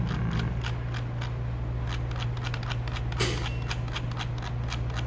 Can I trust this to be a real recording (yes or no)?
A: yes